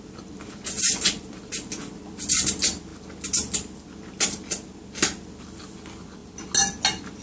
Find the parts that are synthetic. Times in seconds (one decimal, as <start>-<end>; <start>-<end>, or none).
none